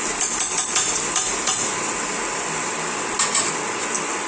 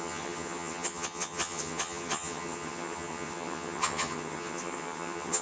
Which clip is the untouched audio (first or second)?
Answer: first